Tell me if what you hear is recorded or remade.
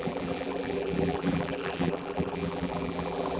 remade